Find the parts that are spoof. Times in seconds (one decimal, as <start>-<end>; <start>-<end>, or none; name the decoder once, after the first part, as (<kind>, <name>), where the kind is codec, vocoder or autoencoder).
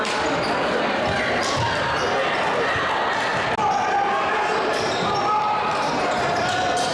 none